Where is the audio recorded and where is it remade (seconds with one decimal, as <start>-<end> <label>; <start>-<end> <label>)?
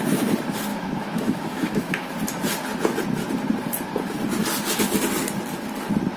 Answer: 0.0-0.7 recorded; 0.7-2.1 remade; 2.1-6.2 recorded